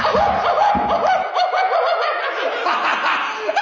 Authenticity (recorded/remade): recorded